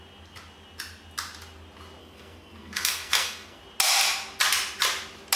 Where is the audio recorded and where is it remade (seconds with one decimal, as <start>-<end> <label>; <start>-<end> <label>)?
0.0-2.0 recorded; 2.0-3.6 remade; 3.6-5.4 recorded